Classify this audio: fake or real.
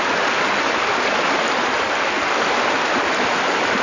real